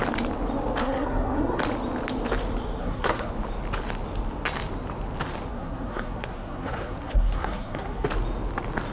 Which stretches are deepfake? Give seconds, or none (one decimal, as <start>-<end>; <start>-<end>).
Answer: 0.8-1.6; 2.8-3.3; 5.5-8.1